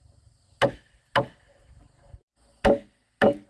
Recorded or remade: recorded